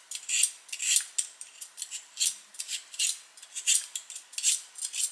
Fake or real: real